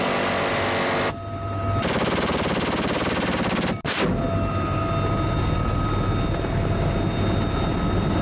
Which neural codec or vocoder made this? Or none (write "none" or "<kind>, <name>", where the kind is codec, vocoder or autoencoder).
none